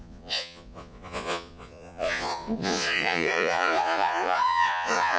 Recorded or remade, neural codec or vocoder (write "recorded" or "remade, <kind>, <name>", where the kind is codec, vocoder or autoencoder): remade, vocoder, Vocos